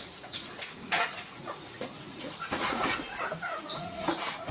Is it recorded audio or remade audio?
remade